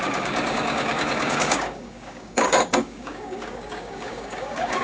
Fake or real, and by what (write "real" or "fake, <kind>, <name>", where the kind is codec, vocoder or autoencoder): fake, codec, DAC